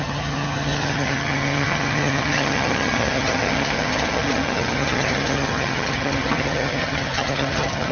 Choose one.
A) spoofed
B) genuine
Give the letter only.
A